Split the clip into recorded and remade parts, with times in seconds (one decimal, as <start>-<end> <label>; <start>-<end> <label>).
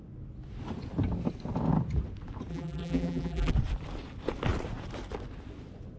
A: 0.0-2.5 recorded; 2.5-3.5 remade; 3.5-6.0 recorded